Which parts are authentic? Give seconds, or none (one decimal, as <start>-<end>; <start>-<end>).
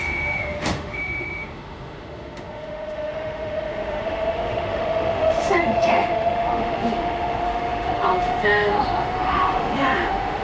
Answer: none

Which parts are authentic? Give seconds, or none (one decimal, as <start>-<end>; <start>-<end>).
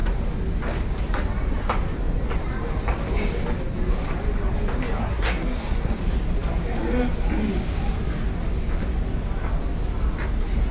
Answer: 0.0-5.0; 6.0-10.7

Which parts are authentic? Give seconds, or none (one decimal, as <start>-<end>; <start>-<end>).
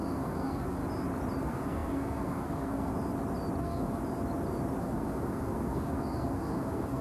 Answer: 0.8-1.4; 2.9-3.6; 4.0-4.8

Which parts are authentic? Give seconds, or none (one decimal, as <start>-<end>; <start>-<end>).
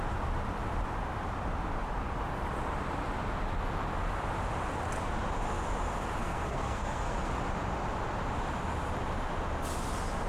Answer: 0.0-6.2; 7.3-10.3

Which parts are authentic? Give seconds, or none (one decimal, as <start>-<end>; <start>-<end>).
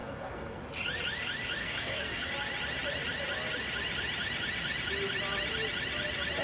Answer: 0.6-1.6; 2.3-6.4